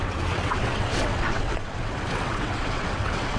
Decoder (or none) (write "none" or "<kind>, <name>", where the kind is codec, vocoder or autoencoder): vocoder, WaveNeXt